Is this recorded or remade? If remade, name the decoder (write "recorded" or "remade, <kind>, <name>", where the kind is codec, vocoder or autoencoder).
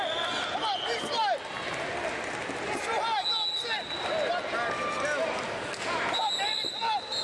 recorded